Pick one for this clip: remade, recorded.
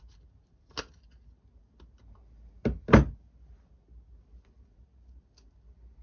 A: recorded